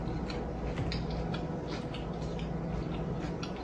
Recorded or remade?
recorded